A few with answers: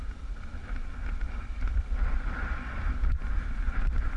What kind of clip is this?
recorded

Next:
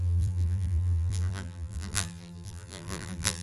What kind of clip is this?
remade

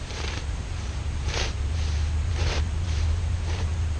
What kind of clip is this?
remade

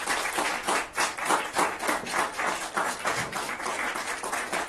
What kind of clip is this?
recorded